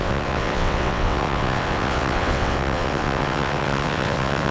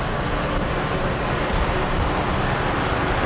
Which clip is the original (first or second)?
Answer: second